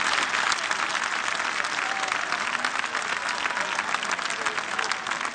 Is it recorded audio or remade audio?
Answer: recorded